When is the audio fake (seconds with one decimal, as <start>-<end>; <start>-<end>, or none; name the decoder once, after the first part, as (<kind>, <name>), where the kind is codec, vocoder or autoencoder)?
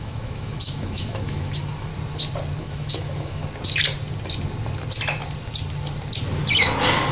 0.0-1.9 (autoencoder, DAC-VAE); 2.6-3.4